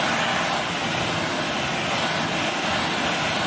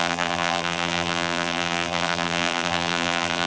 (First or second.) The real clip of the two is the first